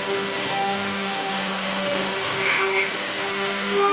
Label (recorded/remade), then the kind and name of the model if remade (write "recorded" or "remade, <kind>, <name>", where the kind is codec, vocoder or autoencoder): remade, autoencoder, DAC-VAE